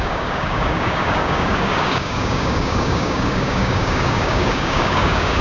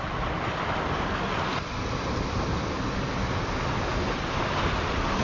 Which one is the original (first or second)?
second